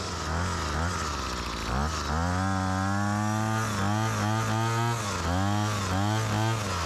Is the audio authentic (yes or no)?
yes